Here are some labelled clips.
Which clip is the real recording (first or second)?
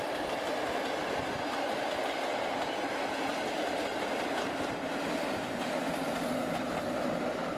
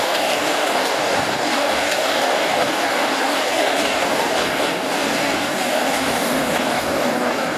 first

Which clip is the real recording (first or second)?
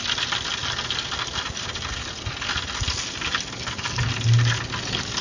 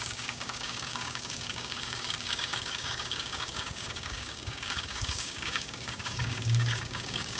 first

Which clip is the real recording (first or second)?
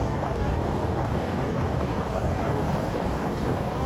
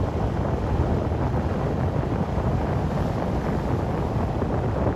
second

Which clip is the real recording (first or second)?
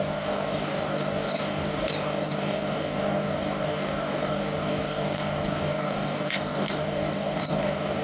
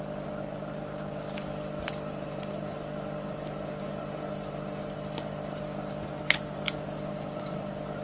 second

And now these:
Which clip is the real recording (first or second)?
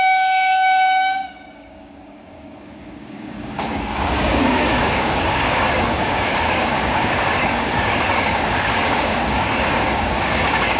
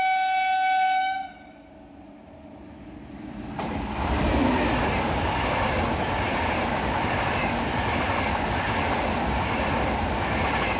second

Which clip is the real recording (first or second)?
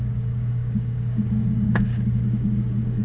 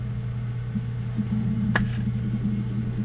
second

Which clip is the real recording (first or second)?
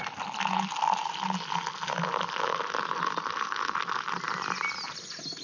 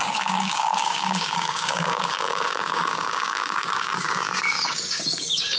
first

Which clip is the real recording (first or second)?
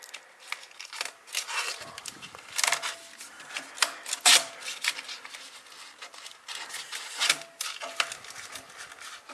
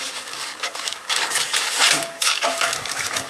first